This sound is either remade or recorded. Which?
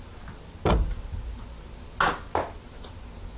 recorded